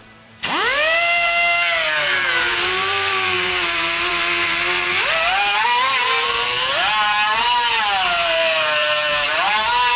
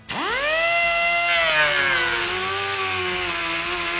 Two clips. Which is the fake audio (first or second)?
first